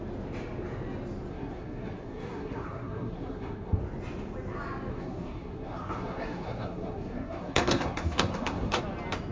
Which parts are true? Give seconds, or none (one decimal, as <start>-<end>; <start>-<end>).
0.0-1.3; 3.8-4.9; 8.8-9.3